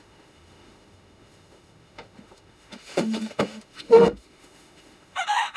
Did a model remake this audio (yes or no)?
yes